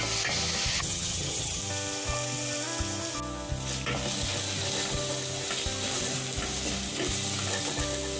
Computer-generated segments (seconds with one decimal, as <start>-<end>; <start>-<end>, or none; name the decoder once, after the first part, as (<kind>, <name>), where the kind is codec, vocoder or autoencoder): 0.7-1.6 (vocoder, HiFi-GAN)